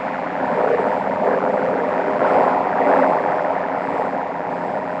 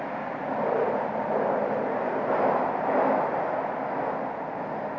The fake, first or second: first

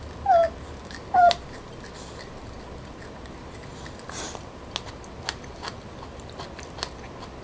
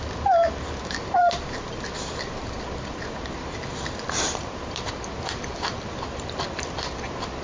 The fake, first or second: second